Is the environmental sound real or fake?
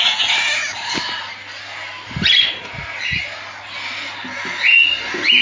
real